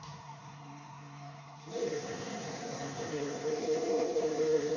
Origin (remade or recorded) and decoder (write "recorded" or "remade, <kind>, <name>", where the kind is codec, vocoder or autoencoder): remade, codec, SNAC